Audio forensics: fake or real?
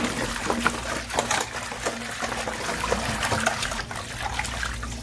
real